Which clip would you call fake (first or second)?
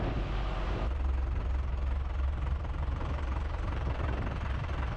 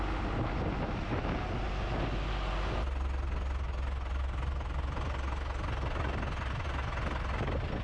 first